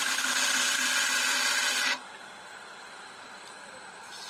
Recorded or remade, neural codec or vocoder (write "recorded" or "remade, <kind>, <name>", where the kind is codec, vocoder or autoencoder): recorded